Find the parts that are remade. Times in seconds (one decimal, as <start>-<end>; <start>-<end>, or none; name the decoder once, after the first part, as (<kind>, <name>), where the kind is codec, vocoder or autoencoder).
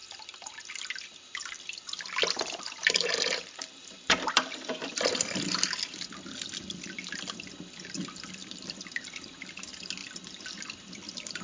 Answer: 0.0-5.1 (vocoder, BigVGAN v2); 8.4-9.3; 10.0-11.4